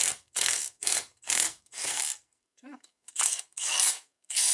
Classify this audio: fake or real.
fake